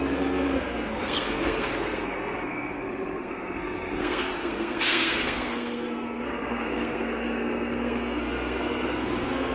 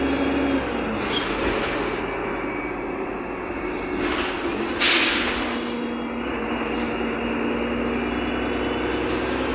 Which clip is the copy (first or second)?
first